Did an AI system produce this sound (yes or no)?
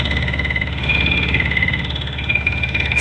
yes